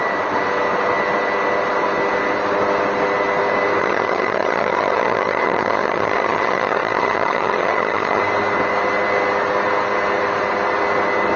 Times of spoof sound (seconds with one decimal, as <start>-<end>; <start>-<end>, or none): 3.8-8.2